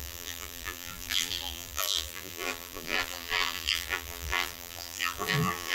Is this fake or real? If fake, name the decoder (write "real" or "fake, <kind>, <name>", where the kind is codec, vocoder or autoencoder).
fake, vocoder, BigVGAN v2